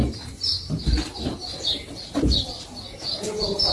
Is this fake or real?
real